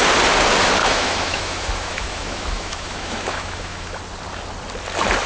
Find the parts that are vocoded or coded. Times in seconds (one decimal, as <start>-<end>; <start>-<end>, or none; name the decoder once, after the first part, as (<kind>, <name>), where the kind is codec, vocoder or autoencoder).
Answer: 0.8-4.0 (autoencoder, DAC-VAE)